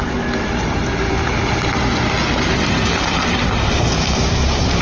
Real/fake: real